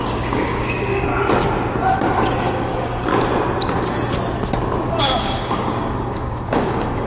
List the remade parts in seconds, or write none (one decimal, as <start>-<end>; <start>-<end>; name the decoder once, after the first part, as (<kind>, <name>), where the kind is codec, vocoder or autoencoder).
0.0-1.1 (codec, DAC); 2.4-3.1; 5.0-7.1